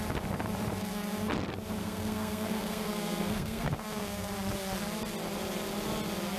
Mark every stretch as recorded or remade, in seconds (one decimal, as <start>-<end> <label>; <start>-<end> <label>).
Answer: 0.0-0.8 recorded; 0.8-1.3 remade; 1.3-1.8 recorded; 1.8-4.3 remade; 4.3-6.4 recorded